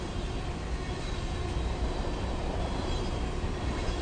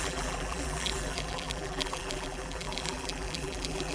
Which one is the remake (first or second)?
second